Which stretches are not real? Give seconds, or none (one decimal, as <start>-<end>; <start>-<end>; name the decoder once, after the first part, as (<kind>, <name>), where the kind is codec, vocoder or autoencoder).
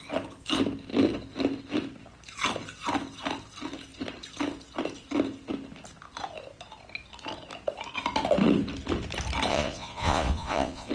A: 9.5-10.9 (vocoder, Vocos)